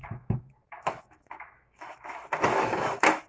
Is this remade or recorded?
remade